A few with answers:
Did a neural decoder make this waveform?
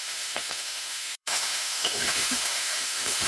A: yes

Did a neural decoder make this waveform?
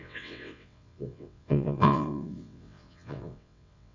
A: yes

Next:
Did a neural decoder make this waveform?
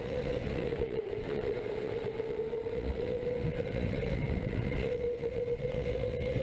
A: yes